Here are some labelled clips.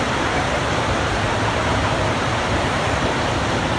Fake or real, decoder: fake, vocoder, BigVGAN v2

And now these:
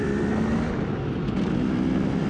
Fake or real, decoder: fake, vocoder, BigVGAN v2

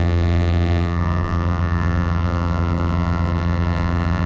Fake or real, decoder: fake, vocoder, BigVGAN v2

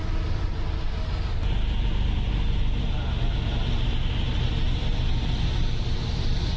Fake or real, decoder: real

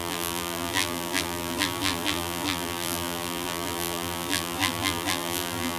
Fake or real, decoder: fake, vocoder, BigVGAN v2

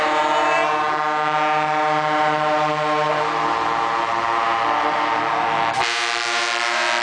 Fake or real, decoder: real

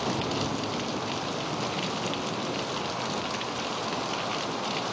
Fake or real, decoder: real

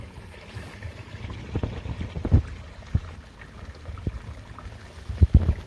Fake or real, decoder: real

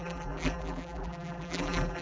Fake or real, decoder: fake, vocoder, BigVGAN v2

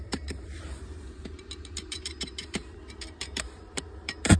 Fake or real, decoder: fake, vocoder, BigVGAN v2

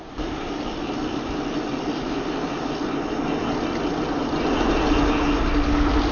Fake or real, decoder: real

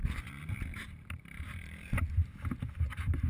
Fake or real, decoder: fake, vocoder, BigVGAN v2